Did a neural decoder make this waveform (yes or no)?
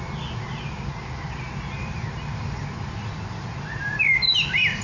no